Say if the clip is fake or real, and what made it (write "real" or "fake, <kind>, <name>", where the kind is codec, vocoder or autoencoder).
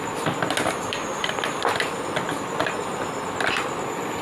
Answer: real